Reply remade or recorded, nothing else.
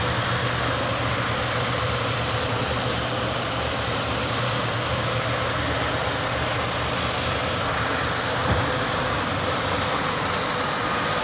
recorded